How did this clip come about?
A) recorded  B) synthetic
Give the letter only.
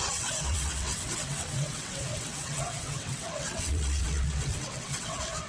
B